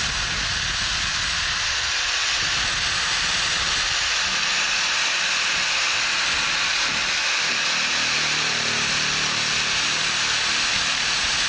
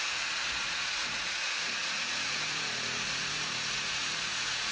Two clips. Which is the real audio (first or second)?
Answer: first